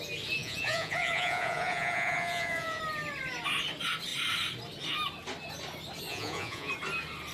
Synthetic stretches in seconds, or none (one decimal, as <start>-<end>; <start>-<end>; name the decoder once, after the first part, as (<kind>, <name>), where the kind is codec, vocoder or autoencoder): 0.4-2.8 (vocoder, Vocos); 6.1-6.7

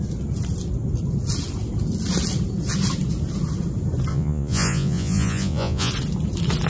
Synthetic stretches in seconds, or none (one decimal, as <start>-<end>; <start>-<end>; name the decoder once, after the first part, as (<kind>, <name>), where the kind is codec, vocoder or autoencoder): 4.1-5.9 (vocoder, Vocos)

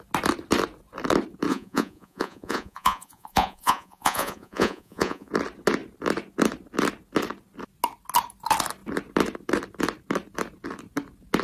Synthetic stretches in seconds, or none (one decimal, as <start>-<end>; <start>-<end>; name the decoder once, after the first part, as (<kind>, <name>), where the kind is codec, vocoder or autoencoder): 1.5-5.3 (vocoder, Vocos)